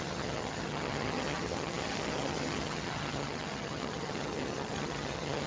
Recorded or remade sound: remade